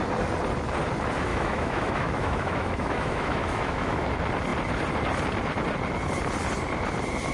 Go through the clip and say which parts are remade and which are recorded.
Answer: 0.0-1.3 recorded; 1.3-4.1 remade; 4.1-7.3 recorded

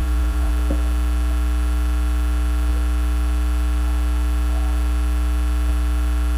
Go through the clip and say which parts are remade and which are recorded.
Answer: 0.0-0.5 remade; 0.5-6.4 recorded

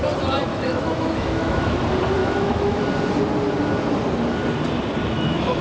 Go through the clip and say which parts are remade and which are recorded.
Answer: 0.0-0.5 recorded; 0.5-1.8 remade; 1.8-2.2 recorded; 2.2-2.8 remade; 2.8-5.0 recorded; 5.0-5.6 remade

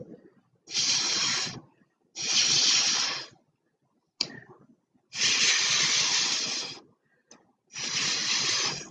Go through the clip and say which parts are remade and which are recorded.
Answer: 0.0-8.9 recorded

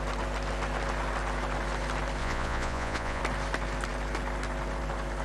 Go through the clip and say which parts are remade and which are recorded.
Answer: 0.0-2.2 recorded; 2.2-3.2 remade; 3.2-5.2 recorded

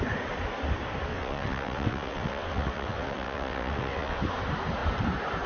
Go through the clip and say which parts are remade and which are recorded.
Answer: 0.0-1.1 recorded; 1.1-4.2 remade; 4.2-5.5 recorded

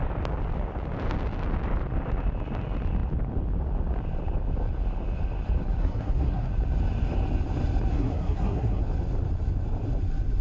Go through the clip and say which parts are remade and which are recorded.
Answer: 0.0-5.8 recorded; 5.8-6.5 remade; 6.5-7.9 recorded; 7.9-8.8 remade; 8.8-10.4 recorded

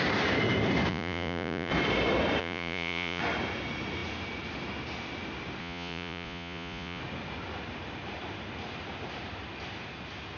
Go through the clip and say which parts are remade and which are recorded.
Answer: 0.0-0.9 recorded; 0.9-1.7 remade; 1.7-2.4 recorded; 2.4-3.2 remade; 3.2-5.6 recorded; 5.6-7.0 remade; 7.0-10.4 recorded